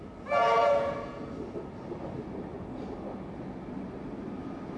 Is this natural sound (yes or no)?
yes